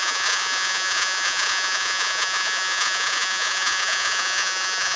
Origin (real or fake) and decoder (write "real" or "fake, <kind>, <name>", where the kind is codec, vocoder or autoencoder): fake, vocoder, Vocos